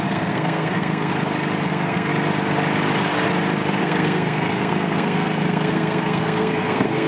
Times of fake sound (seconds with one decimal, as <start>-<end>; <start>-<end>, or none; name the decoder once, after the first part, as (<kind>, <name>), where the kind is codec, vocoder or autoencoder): 0.0-1.1 (codec, SNAC); 1.7-2.1; 3.8-7.1